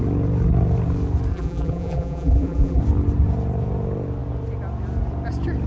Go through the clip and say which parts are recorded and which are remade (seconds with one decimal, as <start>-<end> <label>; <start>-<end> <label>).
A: 0.0-1.3 recorded; 1.3-2.8 remade; 2.8-5.7 recorded